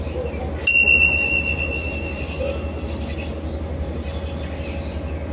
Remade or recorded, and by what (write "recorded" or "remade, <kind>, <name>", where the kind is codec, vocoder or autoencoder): recorded